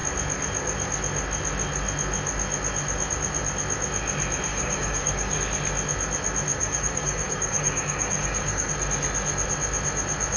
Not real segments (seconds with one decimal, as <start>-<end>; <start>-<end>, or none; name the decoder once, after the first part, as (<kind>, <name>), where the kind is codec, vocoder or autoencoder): 4.5-5.4 (codec, DAC); 6.5-8.7